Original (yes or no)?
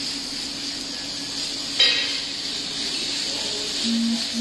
yes